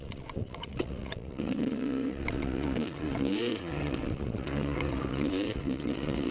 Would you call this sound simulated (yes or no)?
yes